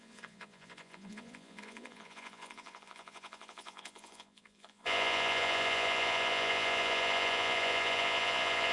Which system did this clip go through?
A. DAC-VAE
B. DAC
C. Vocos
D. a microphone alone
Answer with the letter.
C